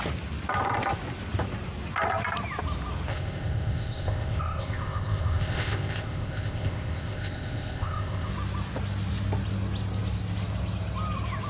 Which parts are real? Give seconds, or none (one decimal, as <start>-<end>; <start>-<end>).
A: 0.0-3.1; 8.3-11.5